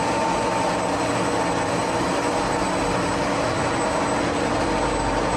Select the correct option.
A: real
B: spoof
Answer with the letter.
A